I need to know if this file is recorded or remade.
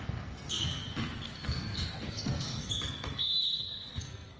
remade